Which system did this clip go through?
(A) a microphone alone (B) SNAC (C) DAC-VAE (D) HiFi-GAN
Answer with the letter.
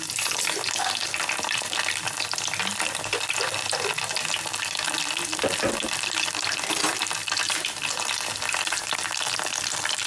A